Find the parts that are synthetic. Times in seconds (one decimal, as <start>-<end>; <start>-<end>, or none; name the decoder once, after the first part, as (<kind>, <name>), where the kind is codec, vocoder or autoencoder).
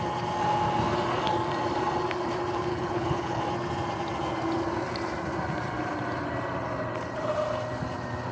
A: 2.7-3.4 (codec, HILCodec)